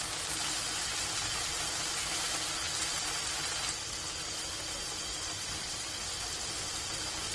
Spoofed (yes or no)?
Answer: no